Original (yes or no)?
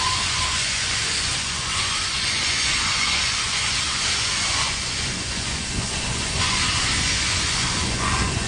no